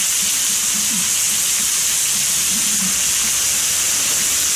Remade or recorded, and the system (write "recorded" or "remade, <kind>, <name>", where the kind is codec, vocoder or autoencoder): recorded